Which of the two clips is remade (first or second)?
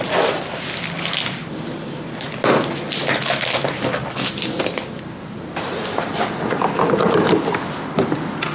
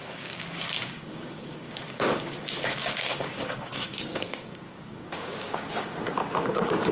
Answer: second